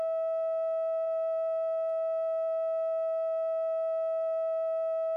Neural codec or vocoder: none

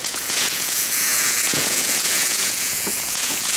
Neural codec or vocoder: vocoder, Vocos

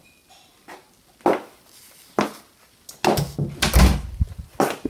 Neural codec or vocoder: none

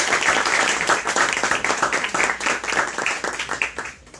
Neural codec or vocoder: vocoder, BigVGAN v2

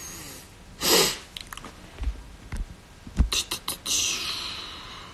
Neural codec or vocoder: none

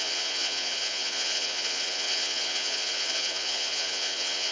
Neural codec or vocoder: vocoder, Vocos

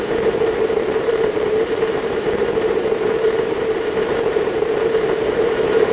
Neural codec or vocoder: vocoder, BigVGAN v2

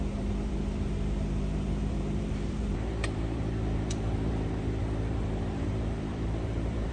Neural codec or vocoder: vocoder, BigVGAN v2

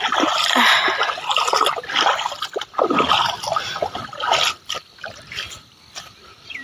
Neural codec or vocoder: none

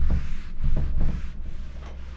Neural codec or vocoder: none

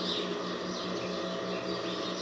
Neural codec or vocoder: none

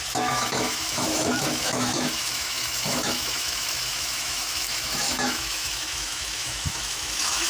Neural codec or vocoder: autoencoder, DAC-VAE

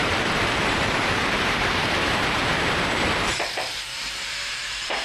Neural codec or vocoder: vocoder, BigVGAN v2